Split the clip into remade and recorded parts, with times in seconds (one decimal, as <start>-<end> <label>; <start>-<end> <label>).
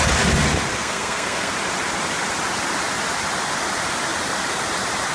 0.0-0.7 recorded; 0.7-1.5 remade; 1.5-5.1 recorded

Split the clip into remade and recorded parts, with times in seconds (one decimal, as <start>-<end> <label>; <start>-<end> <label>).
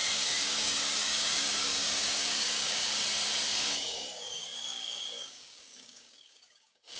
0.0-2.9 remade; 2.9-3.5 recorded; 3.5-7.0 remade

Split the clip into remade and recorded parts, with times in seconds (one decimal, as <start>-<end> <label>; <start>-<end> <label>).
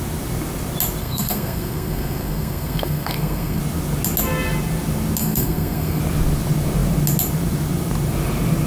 0.0-1.0 recorded; 1.0-3.6 remade; 3.6-5.2 recorded; 5.2-6.0 remade; 6.0-8.7 recorded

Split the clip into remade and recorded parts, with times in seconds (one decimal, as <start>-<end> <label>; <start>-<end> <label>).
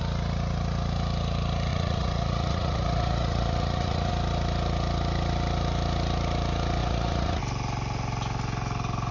0.0-1.7 recorded; 1.7-4.1 remade; 4.1-6.8 recorded; 6.8-7.4 remade; 7.4-9.1 recorded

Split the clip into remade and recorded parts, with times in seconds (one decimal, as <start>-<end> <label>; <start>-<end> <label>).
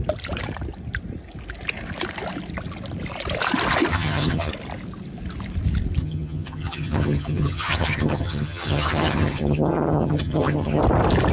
0.0-3.9 recorded; 3.9-4.5 remade; 4.5-6.0 recorded; 6.0-10.8 remade; 10.8-11.3 recorded